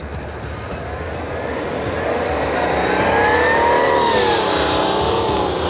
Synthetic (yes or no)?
no